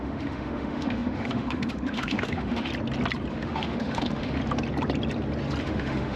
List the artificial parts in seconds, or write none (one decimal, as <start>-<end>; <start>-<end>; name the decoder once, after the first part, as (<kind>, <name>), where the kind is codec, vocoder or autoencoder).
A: 0.0-2.7 (autoencoder, DAC-VAE); 3.3-4.4; 5.6-6.2